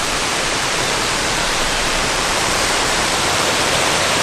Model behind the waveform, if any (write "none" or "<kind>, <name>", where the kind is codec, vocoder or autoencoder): vocoder, BigVGAN v2